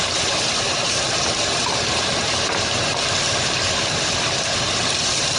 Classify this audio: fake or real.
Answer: fake